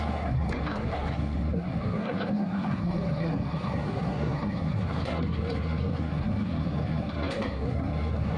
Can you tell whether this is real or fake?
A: fake